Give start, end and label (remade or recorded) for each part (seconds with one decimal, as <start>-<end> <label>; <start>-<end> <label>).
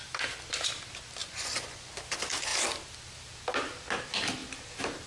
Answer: 0.0-1.2 recorded; 1.2-1.9 remade; 1.9-5.1 recorded